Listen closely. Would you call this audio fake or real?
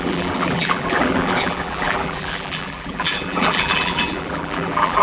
fake